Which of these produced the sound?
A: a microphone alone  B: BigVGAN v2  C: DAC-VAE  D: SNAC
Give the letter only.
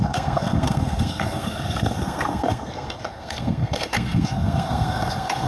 D